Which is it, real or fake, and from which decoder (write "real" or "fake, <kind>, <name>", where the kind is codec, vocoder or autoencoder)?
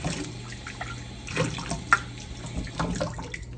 real